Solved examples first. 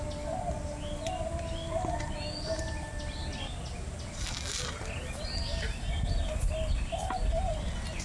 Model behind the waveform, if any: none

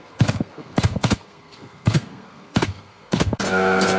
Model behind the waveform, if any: codec, SNAC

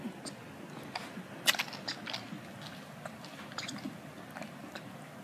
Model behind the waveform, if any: none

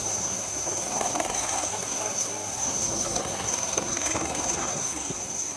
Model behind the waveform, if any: codec, SNAC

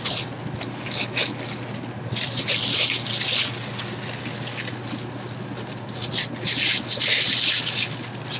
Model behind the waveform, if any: none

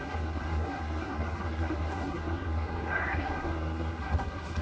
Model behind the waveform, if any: codec, SNAC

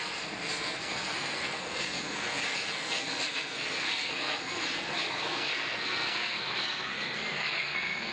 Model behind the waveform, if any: codec, SNAC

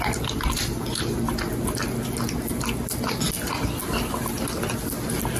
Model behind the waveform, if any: none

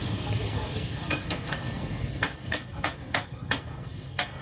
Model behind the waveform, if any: codec, SNAC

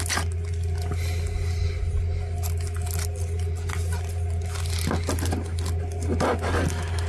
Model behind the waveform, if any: none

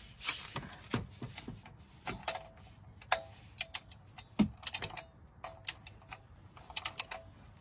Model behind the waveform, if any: none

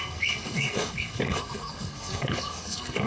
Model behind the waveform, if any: codec, SNAC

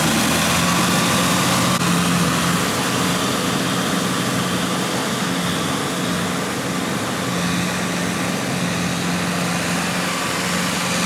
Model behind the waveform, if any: none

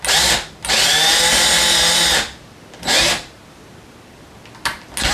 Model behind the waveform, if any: none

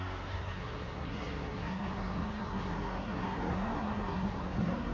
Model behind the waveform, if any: codec, SNAC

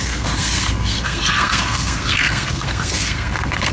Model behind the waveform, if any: codec, SNAC